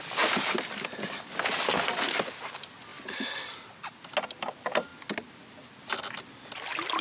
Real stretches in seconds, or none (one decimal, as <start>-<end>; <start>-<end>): 0.0-7.0